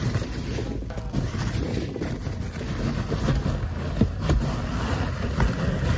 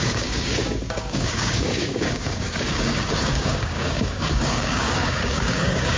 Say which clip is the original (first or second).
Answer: first